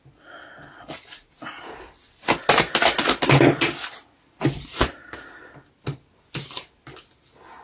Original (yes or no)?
yes